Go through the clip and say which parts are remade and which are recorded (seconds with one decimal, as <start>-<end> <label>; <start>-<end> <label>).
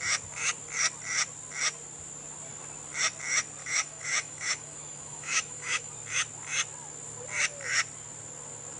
0.0-3.6 recorded; 3.6-5.9 remade; 5.9-8.8 recorded